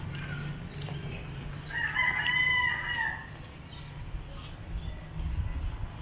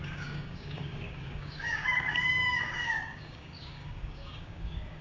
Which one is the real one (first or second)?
first